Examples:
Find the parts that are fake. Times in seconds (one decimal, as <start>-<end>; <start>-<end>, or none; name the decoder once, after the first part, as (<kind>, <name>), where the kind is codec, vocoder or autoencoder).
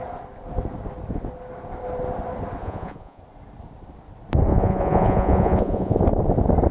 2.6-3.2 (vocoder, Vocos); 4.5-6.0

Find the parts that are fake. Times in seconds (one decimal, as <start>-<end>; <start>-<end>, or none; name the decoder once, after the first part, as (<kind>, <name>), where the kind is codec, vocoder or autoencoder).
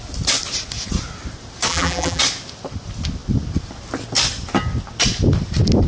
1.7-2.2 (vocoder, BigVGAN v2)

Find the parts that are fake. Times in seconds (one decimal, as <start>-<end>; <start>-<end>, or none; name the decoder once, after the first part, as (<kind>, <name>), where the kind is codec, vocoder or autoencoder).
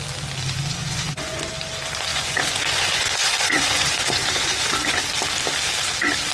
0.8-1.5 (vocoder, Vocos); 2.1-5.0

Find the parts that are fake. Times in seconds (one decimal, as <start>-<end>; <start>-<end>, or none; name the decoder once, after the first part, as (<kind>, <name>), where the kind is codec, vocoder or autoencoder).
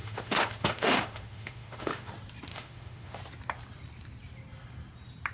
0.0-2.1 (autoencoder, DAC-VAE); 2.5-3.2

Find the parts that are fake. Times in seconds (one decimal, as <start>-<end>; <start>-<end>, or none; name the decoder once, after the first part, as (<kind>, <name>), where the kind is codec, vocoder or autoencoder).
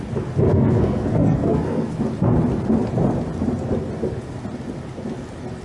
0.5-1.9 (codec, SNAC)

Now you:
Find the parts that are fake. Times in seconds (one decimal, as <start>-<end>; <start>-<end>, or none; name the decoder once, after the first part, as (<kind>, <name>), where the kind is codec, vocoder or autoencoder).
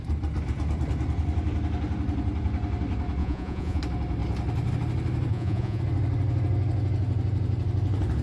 3.2-3.8 (vocoder, Vocos); 5.3-5.8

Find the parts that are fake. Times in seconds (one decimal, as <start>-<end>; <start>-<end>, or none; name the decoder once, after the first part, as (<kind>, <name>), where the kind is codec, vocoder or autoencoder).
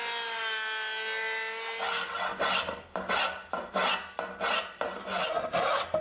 none